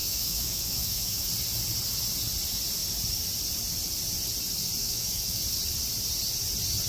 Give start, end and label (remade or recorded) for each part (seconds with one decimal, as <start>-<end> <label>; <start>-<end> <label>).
0.0-1.3 remade; 1.3-4.8 recorded; 4.8-5.4 remade; 5.4-6.9 recorded